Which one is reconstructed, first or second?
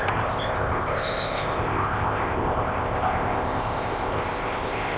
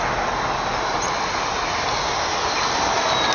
first